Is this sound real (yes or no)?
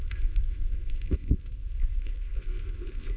no